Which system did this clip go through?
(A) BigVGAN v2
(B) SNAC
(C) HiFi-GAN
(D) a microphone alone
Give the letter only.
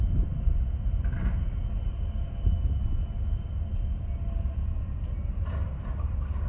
D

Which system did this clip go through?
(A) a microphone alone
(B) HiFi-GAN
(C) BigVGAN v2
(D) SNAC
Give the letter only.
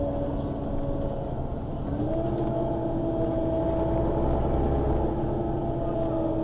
A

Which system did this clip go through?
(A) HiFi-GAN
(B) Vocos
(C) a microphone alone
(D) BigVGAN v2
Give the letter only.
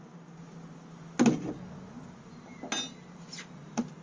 C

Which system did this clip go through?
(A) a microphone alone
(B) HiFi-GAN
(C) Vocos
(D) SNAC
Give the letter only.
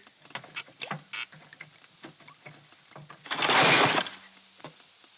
A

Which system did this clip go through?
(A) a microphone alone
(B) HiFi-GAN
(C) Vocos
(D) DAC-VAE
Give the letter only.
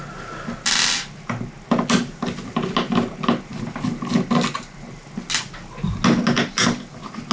A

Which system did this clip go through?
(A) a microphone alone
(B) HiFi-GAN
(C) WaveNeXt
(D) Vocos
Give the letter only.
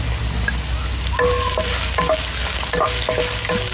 A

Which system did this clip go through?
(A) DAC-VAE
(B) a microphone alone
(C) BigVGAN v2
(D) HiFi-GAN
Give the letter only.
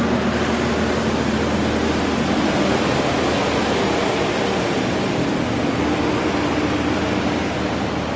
B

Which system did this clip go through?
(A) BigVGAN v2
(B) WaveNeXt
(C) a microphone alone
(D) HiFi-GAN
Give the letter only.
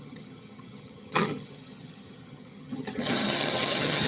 D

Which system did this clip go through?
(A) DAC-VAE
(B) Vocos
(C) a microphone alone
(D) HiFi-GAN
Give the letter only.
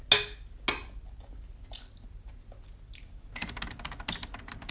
C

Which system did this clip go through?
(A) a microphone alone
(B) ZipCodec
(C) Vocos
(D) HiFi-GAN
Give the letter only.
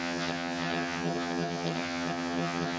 D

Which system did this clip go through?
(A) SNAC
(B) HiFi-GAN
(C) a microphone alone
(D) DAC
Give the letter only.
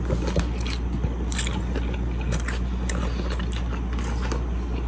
C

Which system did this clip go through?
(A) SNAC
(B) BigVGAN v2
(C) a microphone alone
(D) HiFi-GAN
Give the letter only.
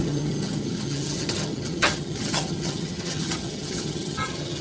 D